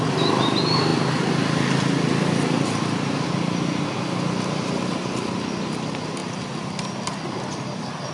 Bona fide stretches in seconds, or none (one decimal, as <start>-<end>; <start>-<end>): 0.0-8.1